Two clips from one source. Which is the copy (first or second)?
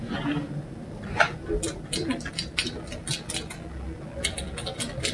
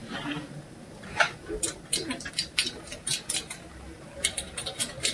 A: second